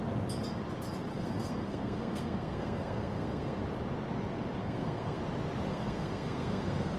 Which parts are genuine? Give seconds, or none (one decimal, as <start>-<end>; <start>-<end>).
0.0-1.1; 3.6-4.6; 5.2-5.7